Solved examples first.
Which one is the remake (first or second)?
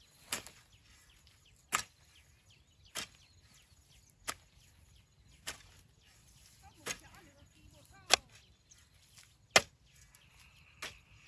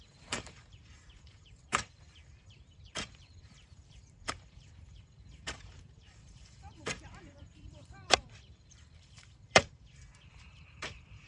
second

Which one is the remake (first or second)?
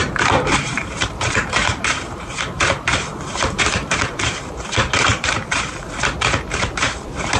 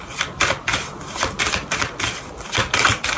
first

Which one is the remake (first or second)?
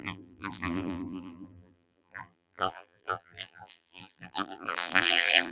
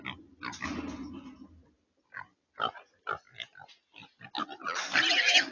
first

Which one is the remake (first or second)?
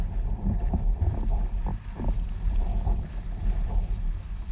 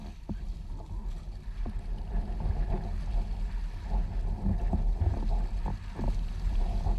first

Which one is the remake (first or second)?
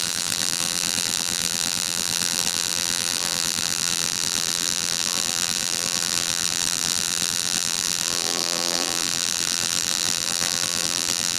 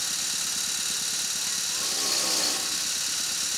first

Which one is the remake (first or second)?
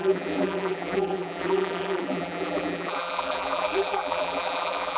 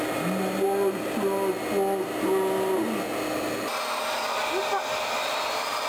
first